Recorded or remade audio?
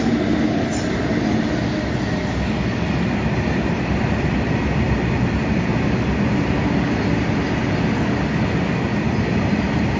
recorded